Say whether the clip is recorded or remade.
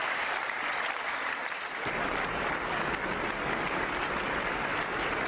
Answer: recorded